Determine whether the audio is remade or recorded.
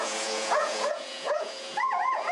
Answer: remade